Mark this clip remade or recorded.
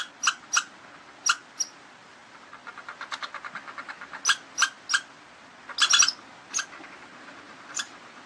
recorded